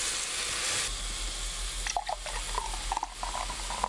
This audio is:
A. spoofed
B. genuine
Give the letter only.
B